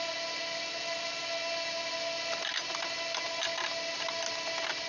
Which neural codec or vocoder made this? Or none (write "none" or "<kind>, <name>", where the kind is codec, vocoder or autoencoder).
none